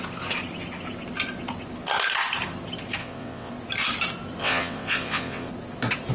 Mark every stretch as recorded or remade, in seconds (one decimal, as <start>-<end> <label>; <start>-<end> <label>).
0.0-3.0 recorded; 3.0-3.5 remade; 3.5-4.4 recorded; 4.4-5.5 remade; 5.5-6.1 recorded